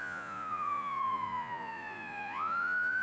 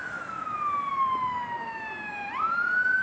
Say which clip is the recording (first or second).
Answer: second